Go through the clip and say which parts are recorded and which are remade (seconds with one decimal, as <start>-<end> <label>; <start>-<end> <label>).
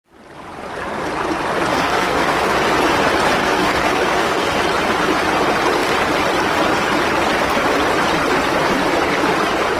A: 0.0-1.7 recorded; 1.7-2.6 remade; 2.6-3.4 recorded; 3.4-4.6 remade; 4.6-9.8 recorded